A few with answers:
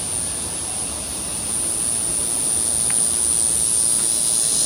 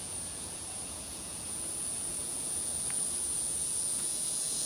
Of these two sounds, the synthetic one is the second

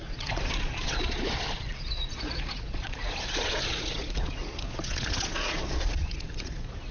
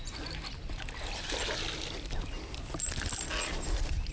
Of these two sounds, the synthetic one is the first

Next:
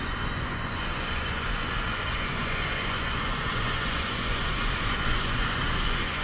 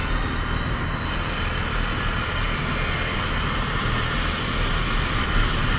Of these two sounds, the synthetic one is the first